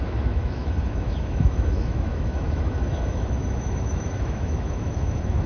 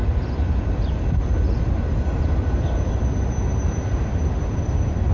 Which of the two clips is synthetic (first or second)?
first